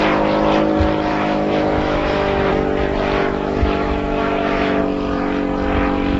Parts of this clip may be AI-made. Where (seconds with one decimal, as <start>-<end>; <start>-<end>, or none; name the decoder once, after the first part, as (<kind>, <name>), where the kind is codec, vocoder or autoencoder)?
1.1-2.5 (autoencoder, DAC-VAE); 3.2-4.8